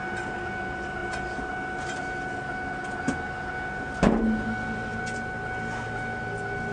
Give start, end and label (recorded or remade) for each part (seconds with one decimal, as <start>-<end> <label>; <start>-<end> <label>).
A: 0.0-6.7 recorded

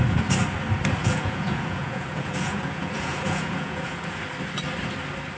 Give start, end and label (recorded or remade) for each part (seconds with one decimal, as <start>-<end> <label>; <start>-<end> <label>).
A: 0.0-1.0 recorded; 1.0-4.2 remade; 4.2-5.4 recorded

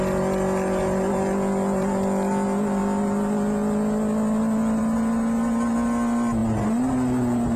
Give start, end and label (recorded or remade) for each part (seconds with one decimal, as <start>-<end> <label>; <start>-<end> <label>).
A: 0.0-7.6 recorded

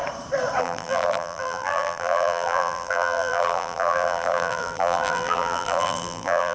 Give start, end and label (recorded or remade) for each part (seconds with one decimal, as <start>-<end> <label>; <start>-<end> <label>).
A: 0.0-0.6 recorded; 0.6-6.5 remade

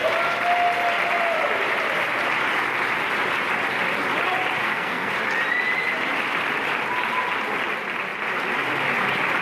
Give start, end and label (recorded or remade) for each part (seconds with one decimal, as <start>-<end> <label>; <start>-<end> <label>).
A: 0.0-4.6 recorded; 4.6-5.1 remade; 5.1-9.4 recorded